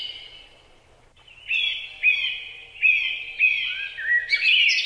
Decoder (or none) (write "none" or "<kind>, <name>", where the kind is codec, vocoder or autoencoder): none